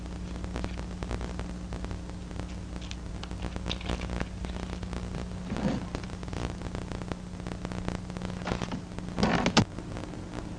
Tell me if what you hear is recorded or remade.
recorded